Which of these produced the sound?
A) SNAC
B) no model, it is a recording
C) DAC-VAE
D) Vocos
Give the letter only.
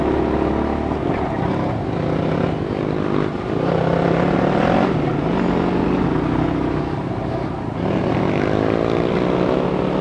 B